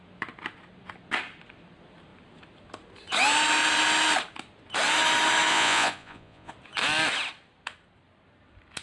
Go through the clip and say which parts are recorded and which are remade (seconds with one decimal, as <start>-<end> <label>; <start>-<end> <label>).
0.0-5.5 recorded; 5.5-6.5 remade; 6.5-8.8 recorded